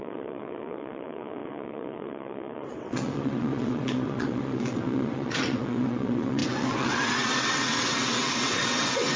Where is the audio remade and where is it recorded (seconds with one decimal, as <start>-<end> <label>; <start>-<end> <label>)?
0.0-9.2 remade